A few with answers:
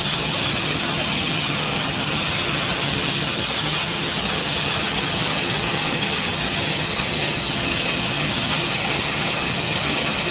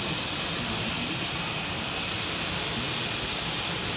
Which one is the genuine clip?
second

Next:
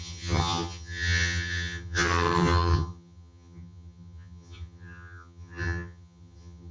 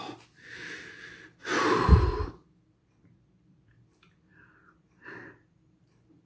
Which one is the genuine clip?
second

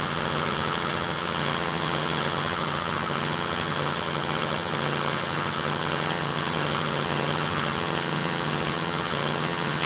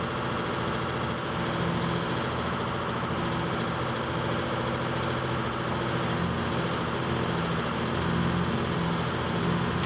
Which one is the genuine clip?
second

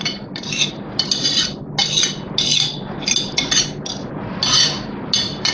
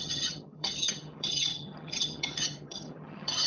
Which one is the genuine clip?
first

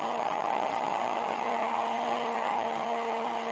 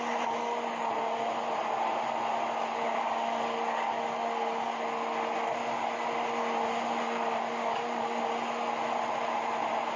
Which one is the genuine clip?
second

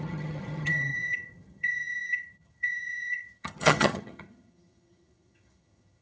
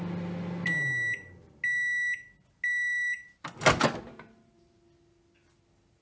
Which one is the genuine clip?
second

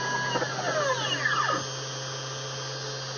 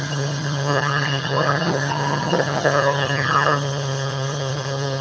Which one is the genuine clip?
first